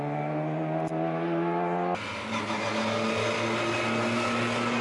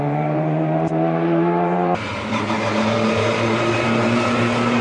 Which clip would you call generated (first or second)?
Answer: second